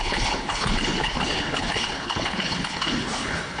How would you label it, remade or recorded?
remade